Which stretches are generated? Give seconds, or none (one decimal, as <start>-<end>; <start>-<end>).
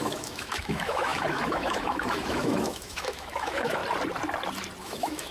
0.0-3.8; 4.8-5.3